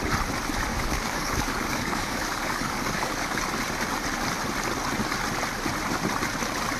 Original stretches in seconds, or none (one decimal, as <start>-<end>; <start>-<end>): 0.0-0.7; 3.4-6.8